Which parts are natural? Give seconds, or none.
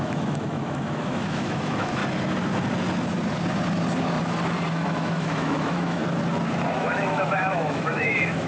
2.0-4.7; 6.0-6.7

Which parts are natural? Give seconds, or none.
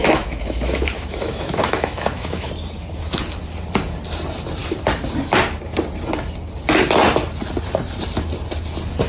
2.5-9.1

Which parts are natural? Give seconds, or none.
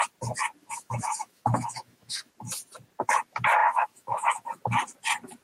0.0-0.6; 2.3-3.6; 4.6-5.4